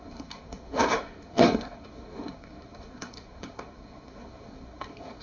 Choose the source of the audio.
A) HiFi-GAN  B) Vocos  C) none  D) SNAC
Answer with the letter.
D